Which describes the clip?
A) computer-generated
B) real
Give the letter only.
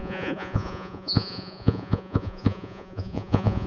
A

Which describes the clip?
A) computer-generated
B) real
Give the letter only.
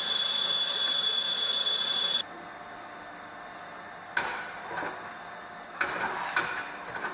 B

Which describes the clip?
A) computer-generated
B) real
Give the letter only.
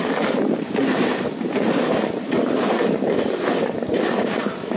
A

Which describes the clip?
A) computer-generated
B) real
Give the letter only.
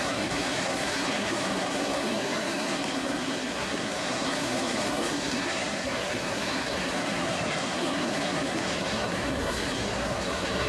A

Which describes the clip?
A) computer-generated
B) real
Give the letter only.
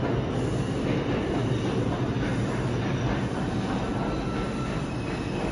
B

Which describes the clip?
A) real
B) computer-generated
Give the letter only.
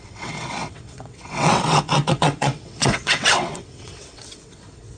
B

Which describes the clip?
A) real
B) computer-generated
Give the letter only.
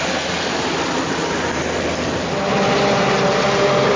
A